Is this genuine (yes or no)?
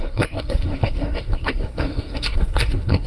no